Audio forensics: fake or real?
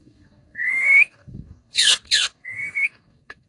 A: fake